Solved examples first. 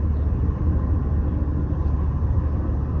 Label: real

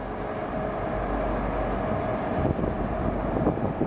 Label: real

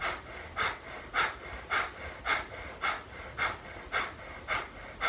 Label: real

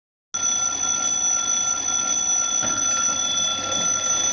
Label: real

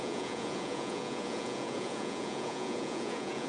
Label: fake